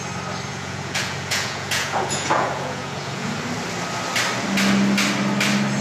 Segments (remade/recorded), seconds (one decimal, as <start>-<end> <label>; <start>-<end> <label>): 0.0-0.5 recorded; 0.5-3.3 remade; 3.3-5.8 recorded